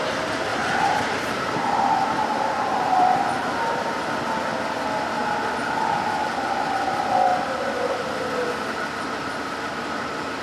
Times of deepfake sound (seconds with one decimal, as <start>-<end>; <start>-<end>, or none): 0.5-3.9